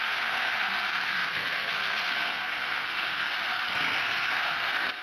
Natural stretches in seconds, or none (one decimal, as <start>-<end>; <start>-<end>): 3.3-4.0